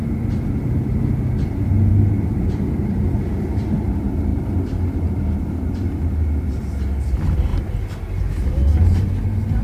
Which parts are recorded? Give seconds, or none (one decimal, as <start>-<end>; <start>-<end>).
0.0-1.9; 3.8-4.3; 6.6-9.6